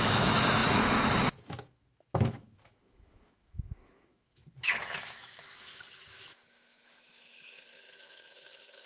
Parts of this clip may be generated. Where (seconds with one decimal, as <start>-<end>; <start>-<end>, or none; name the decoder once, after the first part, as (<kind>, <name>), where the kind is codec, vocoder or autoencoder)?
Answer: 0.0-8.9 (autoencoder, DAC-VAE)

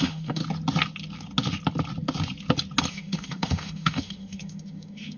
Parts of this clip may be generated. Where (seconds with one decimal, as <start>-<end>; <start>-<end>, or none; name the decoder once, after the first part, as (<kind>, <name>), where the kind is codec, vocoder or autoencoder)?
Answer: 0.0-0.4 (autoencoder, DAC-VAE); 2.9-5.2